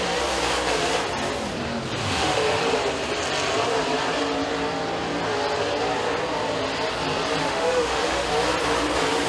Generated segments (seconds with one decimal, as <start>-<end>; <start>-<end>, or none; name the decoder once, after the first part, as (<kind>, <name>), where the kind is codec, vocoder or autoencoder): 2.0-2.6 (autoencoder, DAC-VAE); 7.4-8.3